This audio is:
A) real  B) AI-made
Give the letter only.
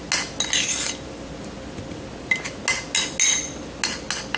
A